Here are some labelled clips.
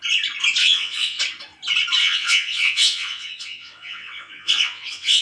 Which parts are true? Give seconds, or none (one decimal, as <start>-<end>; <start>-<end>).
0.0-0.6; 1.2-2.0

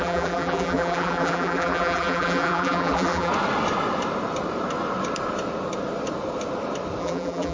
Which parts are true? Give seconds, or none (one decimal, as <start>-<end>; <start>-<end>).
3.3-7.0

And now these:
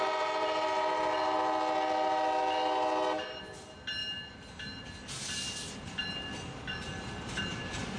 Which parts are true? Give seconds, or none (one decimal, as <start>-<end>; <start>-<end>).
0.0-8.0

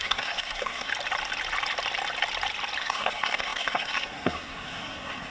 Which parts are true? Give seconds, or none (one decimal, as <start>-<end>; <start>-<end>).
0.9-2.8

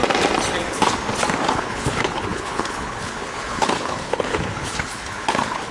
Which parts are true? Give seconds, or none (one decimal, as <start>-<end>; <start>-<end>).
0.0-1.5